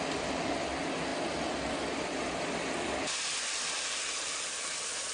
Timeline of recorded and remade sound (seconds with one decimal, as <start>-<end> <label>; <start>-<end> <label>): 0.0-5.1 recorded